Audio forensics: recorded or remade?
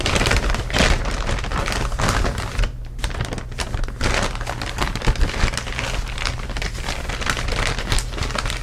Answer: recorded